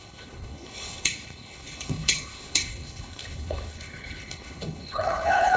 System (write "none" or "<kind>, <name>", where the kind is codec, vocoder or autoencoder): codec, HILCodec